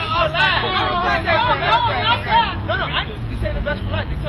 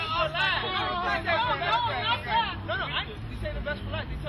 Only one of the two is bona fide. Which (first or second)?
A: second